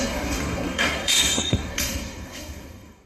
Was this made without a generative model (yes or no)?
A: no